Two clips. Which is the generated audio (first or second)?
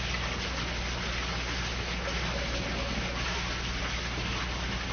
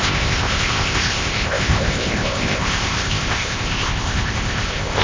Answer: second